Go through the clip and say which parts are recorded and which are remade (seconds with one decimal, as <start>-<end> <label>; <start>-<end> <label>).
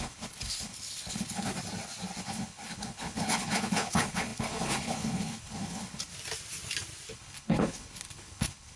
0.0-1.5 remade; 1.5-2.2 recorded; 2.2-6.1 remade; 6.1-7.1 recorded; 7.1-8.8 remade